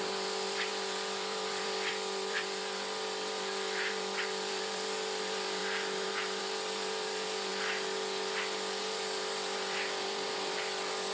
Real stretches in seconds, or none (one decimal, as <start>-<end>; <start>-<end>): 7.5-8.8